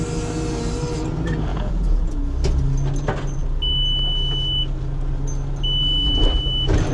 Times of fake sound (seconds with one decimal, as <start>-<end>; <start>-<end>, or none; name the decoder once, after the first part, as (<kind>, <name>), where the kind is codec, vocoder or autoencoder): 1.5-2.2 (vocoder, Vocos)